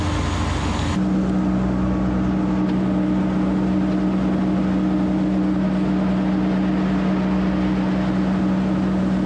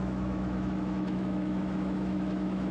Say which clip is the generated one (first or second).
second